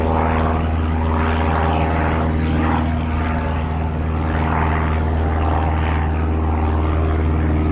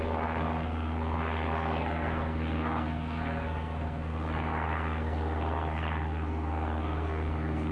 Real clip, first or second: first